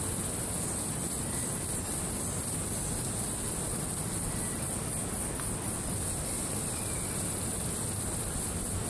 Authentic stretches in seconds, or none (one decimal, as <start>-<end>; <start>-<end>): 0.0-8.9